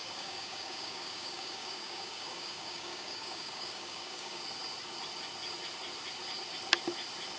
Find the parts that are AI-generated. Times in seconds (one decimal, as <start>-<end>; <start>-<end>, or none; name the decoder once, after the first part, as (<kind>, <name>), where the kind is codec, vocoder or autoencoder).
0.0-4.4 (codec, DAC)